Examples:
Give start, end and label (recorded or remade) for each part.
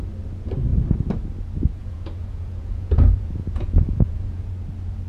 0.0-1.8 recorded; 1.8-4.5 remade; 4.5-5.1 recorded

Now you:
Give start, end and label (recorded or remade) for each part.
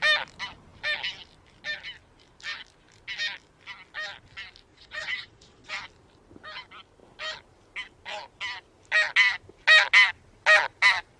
0.0-4.7 recorded; 4.7-5.7 remade; 5.7-11.2 recorded